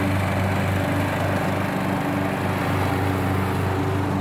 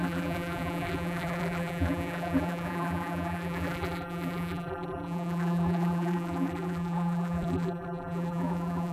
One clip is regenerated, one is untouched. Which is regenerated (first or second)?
second